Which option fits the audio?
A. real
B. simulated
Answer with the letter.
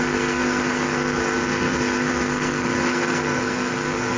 B